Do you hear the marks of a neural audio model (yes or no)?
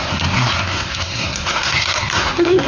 yes